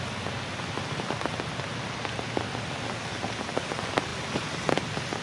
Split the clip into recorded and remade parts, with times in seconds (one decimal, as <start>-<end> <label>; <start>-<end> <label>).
0.0-5.2 recorded